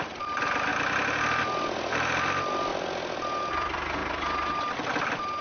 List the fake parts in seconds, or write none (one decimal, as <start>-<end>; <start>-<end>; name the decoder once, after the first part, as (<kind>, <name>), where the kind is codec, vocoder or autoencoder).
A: 0.0-0.7 (vocoder, BigVGAN v2); 1.4-2.7; 3.5-5.4